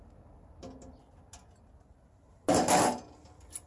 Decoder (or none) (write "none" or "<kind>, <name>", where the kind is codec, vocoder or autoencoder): none